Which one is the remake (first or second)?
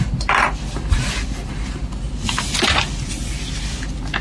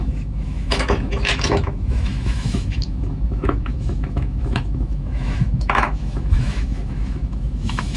second